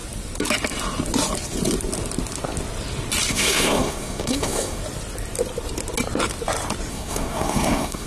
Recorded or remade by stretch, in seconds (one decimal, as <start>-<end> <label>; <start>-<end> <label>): 0.0-3.3 recorded; 3.3-4.8 remade; 4.8-6.9 recorded; 6.9-8.1 remade